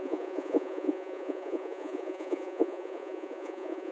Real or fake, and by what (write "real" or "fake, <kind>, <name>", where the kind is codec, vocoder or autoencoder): fake, vocoder, Vocos